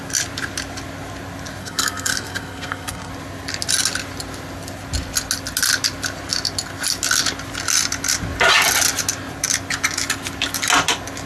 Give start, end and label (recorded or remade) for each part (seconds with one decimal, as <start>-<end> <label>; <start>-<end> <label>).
0.0-1.6 recorded; 1.6-3.1 remade; 3.1-11.3 recorded